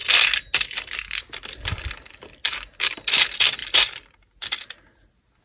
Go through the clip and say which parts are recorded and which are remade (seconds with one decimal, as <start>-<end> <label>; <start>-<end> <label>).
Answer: 0.0-3.6 recorded; 3.6-4.6 remade; 4.6-5.4 recorded

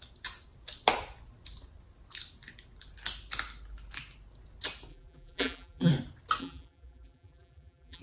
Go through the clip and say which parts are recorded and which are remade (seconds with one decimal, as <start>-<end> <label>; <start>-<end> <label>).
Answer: 0.0-4.9 recorded; 4.9-5.9 remade; 5.9-6.4 recorded; 6.4-8.0 remade